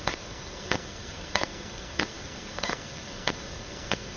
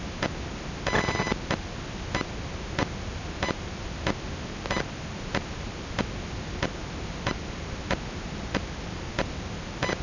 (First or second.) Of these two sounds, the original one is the second